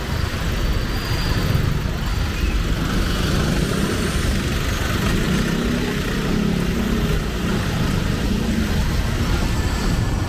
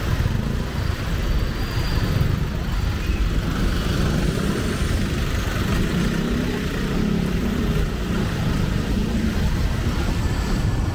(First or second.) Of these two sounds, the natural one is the first